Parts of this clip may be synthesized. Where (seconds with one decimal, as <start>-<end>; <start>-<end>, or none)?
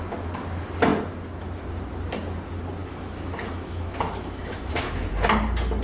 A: 2.8-5.1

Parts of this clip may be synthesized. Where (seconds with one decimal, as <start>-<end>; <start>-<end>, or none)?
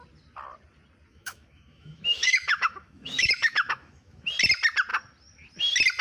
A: 1.1-4.3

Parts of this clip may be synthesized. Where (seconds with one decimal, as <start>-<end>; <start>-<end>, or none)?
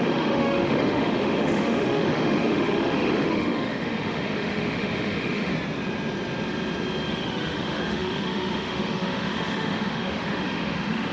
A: 0.0-5.5; 7.1-11.1